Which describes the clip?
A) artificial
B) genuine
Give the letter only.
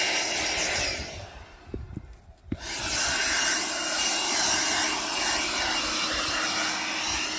B